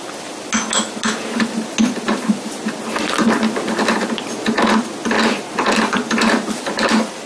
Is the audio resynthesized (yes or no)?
no